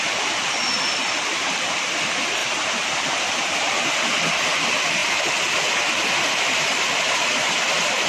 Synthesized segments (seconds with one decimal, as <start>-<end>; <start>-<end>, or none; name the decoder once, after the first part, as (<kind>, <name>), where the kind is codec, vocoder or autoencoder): 2.4-3.1 (vocoder, BigVGAN v2)